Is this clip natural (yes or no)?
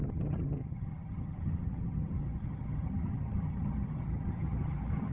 no